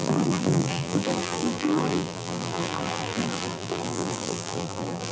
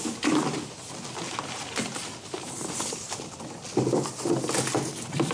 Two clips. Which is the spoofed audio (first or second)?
first